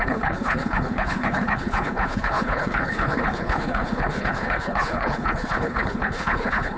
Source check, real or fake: fake